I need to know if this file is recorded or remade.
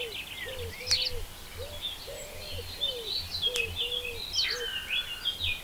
recorded